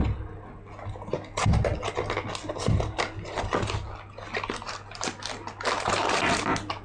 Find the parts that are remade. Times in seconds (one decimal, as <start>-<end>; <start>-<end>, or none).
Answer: none